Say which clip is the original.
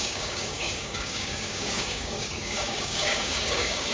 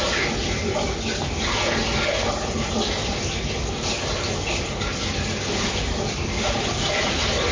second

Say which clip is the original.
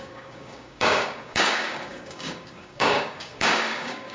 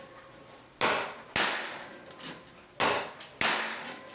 second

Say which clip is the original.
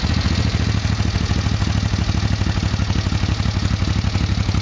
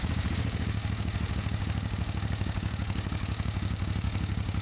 first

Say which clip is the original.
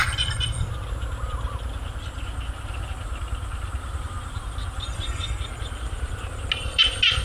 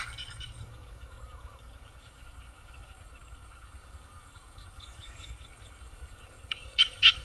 first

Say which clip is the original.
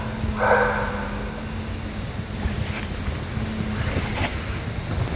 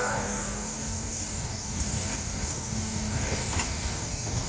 first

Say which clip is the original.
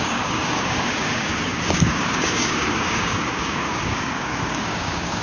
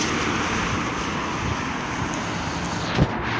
second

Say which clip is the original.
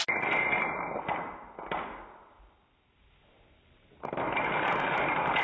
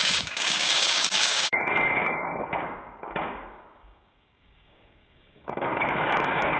first